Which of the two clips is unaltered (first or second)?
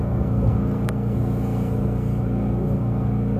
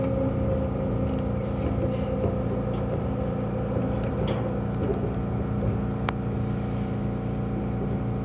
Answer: second